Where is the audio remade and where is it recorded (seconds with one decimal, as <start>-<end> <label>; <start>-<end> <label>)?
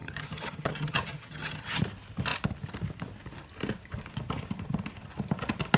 0.0-1.8 remade; 1.8-5.8 recorded